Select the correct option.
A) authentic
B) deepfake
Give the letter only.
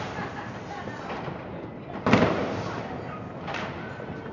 A